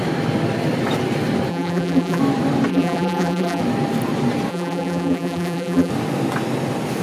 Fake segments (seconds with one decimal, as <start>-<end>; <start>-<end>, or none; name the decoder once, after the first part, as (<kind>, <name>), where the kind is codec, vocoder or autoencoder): 1.5-2.2 (vocoder, BigVGAN v2); 2.7-3.6; 4.5-5.9